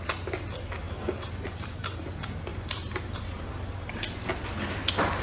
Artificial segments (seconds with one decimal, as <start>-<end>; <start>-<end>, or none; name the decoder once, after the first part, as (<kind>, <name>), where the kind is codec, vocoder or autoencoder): 0.8-2.0 (vocoder, BigVGAN v2); 2.5-3.9